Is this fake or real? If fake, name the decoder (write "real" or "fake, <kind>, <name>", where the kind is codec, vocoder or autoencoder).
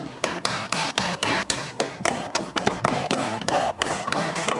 fake, codec, SNAC